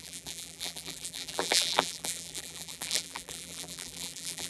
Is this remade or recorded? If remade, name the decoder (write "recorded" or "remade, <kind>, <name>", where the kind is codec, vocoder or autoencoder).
remade, vocoder, BigVGAN v2